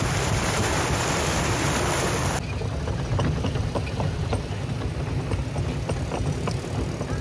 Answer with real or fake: real